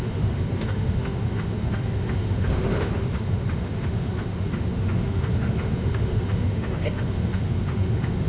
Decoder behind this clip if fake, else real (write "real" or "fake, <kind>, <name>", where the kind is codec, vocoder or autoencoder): fake, autoencoder, DAC-VAE